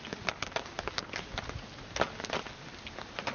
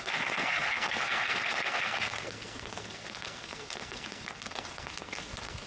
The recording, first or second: first